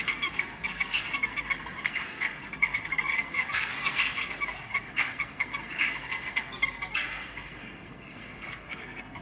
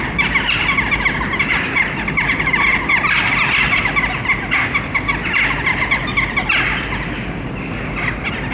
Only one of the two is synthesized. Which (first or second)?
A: first